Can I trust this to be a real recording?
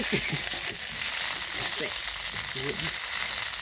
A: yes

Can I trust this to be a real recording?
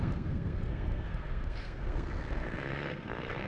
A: no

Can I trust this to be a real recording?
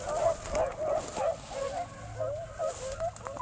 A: yes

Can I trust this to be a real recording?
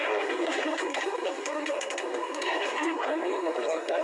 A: no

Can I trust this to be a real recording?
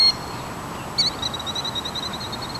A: yes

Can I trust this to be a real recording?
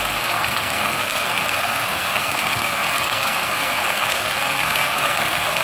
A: no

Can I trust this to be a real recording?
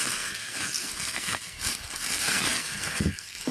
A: no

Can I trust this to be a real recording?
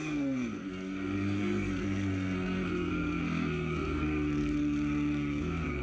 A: no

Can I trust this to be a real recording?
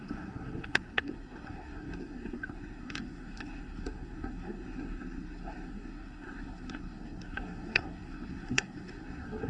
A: no